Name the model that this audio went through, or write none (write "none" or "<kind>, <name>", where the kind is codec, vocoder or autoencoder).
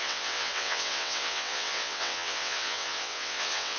vocoder, WaveNeXt